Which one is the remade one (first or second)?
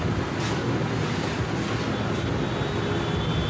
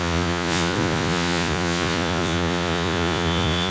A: second